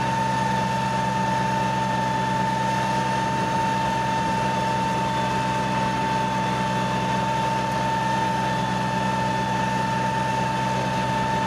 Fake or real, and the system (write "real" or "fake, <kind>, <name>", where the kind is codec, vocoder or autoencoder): real